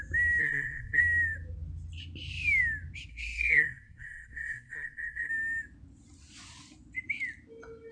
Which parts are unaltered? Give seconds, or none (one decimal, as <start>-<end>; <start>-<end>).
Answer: 0.0-0.4; 1.0-3.1; 5.3-7.9